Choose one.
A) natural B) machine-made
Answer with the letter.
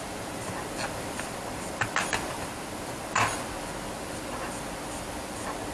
A